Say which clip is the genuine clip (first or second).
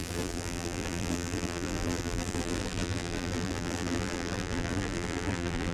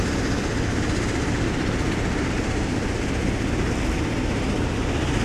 second